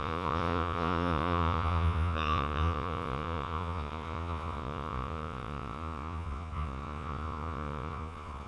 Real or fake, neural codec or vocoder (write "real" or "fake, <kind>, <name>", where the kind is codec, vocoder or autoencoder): fake, vocoder, Vocos